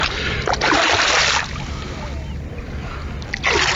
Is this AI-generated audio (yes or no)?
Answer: no